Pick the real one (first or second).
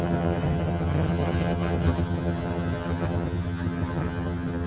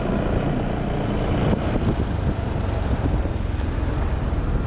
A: second